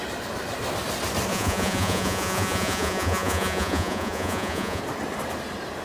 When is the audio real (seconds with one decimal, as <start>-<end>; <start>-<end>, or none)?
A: 0.0-1.3; 4.8-5.8

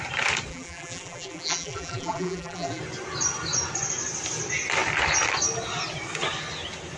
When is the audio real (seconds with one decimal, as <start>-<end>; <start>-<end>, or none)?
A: 0.0-0.5; 2.8-7.0

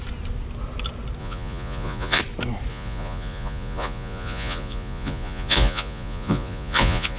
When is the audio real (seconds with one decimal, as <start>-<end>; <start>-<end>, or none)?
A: 0.0-1.2; 2.2-2.7